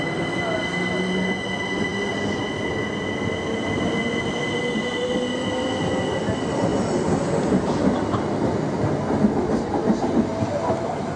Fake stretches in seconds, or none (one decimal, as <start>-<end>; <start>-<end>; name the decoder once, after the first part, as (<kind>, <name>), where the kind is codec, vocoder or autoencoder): none